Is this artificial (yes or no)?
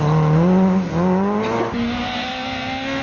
no